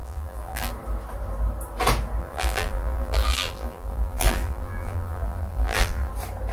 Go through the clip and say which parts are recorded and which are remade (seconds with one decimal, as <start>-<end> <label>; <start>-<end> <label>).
0.0-0.7 remade; 0.7-2.2 recorded; 2.2-6.1 remade; 6.1-6.5 recorded